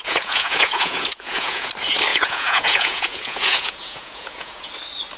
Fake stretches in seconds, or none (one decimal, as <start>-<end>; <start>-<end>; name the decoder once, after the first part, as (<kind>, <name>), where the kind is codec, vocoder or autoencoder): 0.0-1.7 (vocoder, Vocos); 2.1-4.7